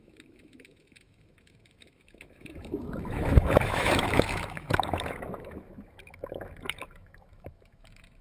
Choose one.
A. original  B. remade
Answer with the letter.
B